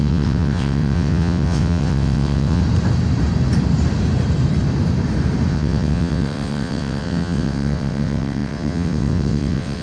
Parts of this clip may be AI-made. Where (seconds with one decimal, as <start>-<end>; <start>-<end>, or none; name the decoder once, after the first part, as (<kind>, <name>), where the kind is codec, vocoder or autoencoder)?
0.0-2.6 (vocoder, WaveNeXt); 5.5-9.8